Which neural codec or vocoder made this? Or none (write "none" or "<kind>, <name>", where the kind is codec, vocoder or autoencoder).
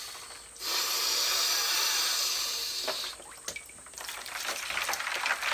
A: none